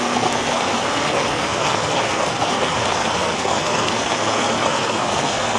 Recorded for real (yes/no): no